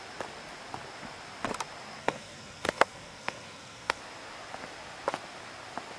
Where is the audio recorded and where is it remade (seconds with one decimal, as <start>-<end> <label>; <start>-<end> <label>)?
0.0-2.0 recorded; 2.0-4.0 remade; 4.0-6.0 recorded